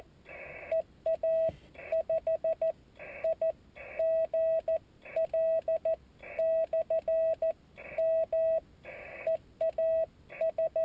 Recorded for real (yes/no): yes